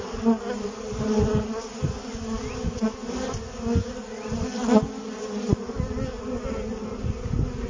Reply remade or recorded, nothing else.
recorded